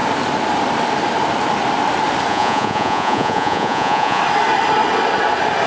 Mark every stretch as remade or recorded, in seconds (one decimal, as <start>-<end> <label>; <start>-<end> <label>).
0.0-2.3 recorded; 2.3-4.2 remade; 4.2-5.7 recorded